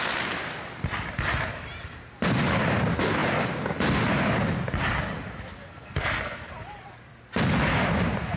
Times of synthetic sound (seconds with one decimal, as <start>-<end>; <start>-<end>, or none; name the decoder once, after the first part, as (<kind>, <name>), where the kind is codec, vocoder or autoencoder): 5.6-6.5 (codec, SNAC)